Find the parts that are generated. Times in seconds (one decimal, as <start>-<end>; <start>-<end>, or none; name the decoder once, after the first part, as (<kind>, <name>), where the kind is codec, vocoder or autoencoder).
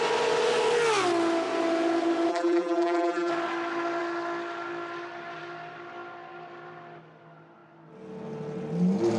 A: 2.3-3.3 (vocoder, BigVGAN v2)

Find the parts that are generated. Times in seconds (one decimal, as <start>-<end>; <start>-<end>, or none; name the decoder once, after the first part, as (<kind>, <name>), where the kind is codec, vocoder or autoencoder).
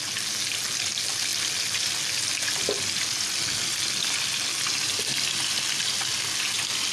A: none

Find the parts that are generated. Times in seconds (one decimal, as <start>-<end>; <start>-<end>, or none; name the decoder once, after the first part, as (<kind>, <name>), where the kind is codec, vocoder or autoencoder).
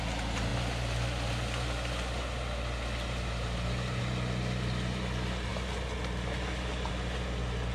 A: none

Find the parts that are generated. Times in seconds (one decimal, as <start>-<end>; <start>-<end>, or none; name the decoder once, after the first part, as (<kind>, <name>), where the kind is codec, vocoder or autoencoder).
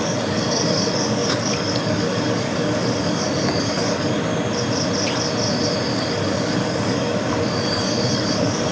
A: 0.0-4.3 (codec, DAC); 5.9-8.7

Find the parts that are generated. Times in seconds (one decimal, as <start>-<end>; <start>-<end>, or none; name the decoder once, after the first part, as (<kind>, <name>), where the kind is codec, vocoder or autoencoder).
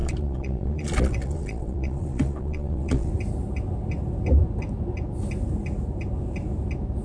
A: 0.0-3.1 (vocoder, Vocos)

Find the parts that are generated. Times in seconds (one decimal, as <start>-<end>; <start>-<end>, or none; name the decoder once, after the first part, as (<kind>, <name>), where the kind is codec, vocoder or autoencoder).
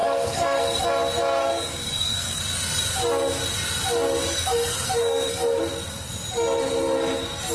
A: 0.0-0.8 (codec, SNAC); 1.4-2.4; 4.2-5.6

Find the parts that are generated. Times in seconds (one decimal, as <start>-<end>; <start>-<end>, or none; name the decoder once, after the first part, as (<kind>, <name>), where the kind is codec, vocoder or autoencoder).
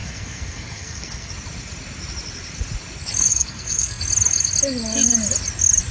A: 0.0-1.3 (codec, SNAC); 3.3-4.0